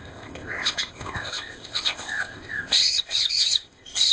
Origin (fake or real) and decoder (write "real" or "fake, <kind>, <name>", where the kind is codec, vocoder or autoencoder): fake, codec, ZipCodec